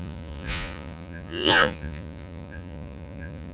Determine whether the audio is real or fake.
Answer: fake